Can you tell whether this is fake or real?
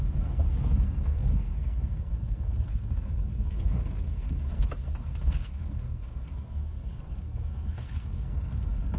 fake